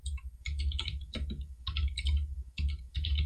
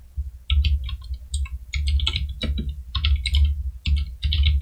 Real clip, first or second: second